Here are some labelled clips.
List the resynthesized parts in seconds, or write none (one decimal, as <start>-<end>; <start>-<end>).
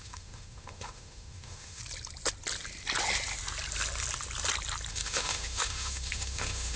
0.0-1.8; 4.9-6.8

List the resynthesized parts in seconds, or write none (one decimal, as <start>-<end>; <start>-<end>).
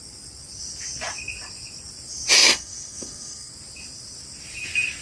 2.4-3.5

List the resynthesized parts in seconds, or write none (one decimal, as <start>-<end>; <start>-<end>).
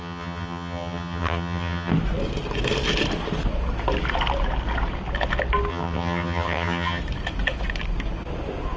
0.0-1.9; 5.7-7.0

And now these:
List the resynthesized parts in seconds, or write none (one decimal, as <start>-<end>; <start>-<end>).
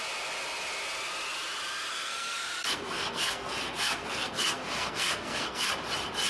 1.9-5.7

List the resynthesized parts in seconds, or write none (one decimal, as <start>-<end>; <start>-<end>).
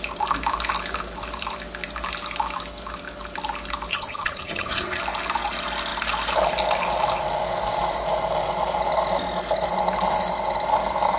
3.9-5.0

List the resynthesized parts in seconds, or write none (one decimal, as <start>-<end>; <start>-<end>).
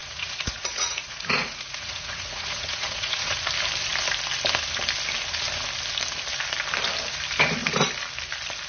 0.0-3.4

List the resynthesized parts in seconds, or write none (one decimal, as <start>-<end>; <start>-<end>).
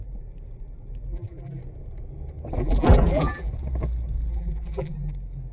1.1-1.6; 2.6-3.5; 4.3-5.1